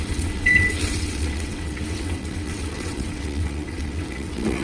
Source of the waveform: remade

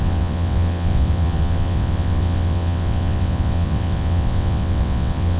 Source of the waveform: remade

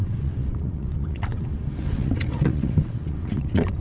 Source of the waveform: remade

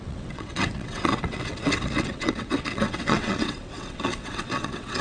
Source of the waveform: remade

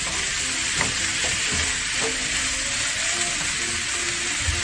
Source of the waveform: recorded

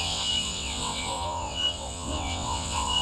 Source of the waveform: remade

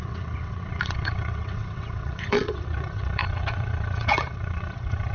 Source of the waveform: remade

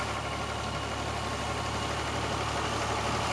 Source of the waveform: recorded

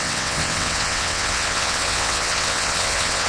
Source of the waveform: remade